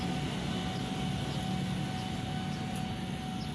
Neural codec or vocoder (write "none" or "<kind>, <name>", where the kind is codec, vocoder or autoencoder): none